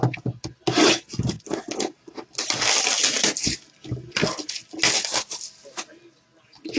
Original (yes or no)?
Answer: yes